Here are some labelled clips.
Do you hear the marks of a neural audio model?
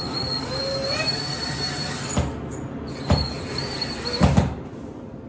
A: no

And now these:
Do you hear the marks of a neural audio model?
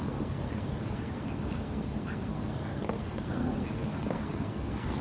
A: yes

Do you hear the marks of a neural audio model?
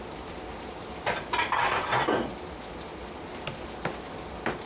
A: no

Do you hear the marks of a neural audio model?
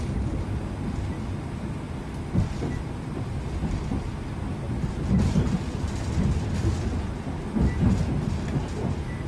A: no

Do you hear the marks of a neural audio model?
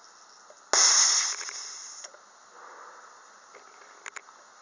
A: no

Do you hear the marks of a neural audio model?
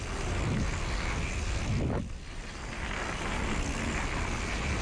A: no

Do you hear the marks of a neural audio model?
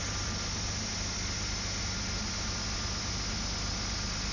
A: no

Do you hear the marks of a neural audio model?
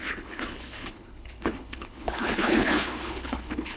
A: yes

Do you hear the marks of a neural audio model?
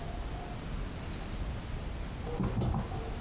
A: no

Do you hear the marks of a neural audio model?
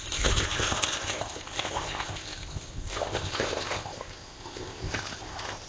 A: yes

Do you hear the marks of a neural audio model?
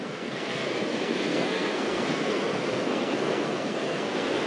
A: yes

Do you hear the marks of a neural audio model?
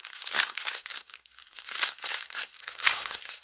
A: yes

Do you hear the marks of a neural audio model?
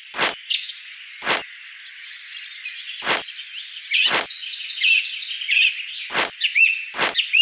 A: no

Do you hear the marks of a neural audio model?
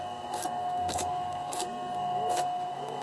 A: yes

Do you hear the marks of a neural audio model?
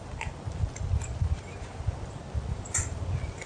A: no